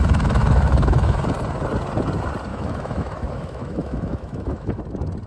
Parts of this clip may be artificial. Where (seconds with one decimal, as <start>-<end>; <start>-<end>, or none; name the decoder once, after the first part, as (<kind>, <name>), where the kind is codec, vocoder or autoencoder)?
0.4-1.2 (autoencoder, DAC-VAE); 2.5-4.8